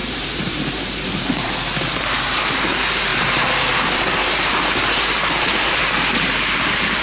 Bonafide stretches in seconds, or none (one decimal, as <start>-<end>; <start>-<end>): none